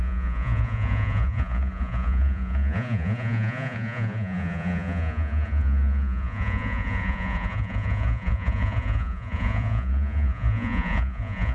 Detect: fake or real fake